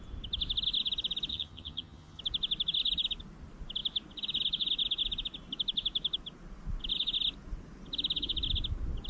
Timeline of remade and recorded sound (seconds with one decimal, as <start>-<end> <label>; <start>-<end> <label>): 0.0-1.3 recorded; 1.3-2.2 remade; 2.2-9.1 recorded